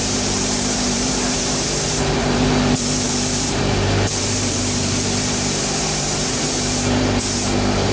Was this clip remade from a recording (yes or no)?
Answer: yes